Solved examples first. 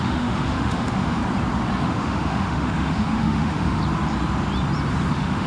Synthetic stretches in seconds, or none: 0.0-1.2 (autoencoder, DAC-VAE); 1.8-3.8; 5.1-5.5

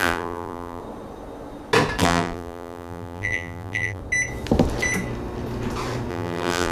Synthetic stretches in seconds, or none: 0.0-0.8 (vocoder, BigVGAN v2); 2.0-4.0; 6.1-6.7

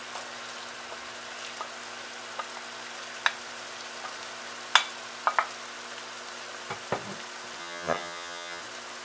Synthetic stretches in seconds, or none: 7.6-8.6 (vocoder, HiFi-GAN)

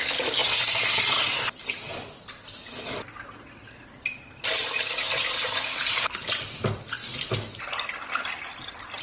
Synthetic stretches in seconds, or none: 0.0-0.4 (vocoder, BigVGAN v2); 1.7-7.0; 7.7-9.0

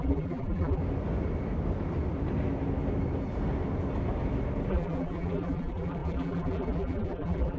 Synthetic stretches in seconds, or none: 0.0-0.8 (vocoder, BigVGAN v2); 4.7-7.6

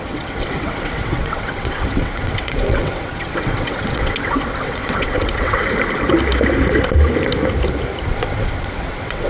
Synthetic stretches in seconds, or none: 0.0-5.6 (vocoder, WaveNeXt); 8.1-9.3

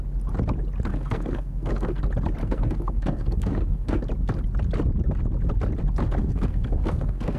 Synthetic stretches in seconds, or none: 0.9-2.0 (codec, SNAC); 2.4-4.0; 6.2-7.4

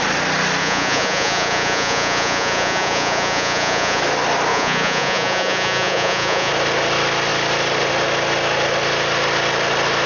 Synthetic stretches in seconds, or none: 0.6-4.0 (vocoder, Vocos); 4.5-6.5